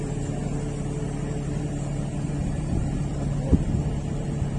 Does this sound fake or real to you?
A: fake